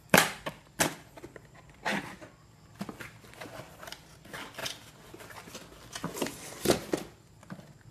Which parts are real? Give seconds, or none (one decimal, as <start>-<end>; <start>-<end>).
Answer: 0.0-7.9